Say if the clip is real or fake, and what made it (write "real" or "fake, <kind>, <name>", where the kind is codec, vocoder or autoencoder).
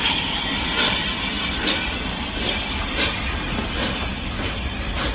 real